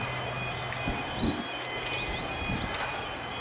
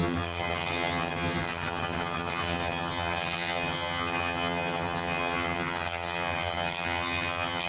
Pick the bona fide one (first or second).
first